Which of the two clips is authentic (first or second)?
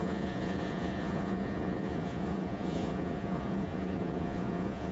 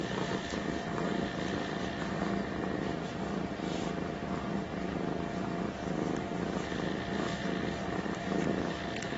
second